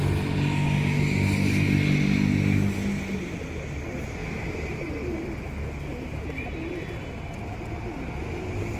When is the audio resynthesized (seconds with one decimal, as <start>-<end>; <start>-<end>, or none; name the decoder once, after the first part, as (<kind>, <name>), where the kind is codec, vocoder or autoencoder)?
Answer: 4.2-5.5 (vocoder, BigVGAN v2); 5.9-7.2